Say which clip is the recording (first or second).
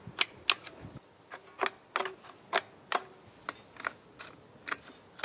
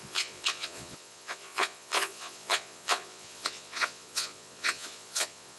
first